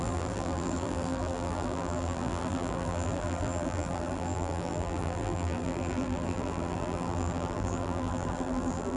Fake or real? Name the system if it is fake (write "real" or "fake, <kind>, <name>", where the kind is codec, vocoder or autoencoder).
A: fake, vocoder, BigVGAN v2